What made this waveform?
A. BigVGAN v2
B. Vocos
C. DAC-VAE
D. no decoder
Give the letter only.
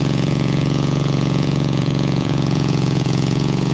B